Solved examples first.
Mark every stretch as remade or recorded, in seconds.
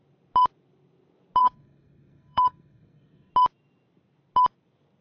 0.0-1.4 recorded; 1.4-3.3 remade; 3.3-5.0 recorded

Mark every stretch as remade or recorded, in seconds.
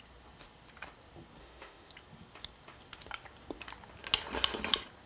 0.0-1.4 recorded; 1.4-1.9 remade; 1.9-5.1 recorded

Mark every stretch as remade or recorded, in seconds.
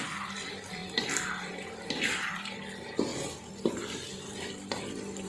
0.0-0.8 remade; 0.8-1.4 recorded; 1.4-3.1 remade; 3.1-3.7 recorded; 3.7-5.3 remade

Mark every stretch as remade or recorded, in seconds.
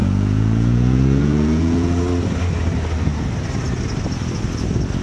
0.0-2.0 remade; 2.0-5.0 recorded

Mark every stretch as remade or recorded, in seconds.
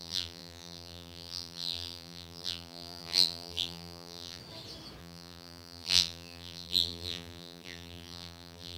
0.0-4.4 remade; 4.4-5.0 recorded; 5.0-8.8 remade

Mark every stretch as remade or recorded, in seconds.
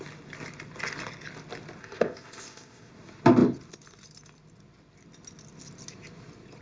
0.0-1.8 recorded; 1.8-2.9 remade; 2.9-6.6 recorded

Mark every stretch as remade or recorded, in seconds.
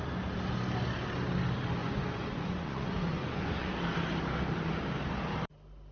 0.0-1.8 recorded; 1.8-3.7 remade; 3.7-5.9 recorded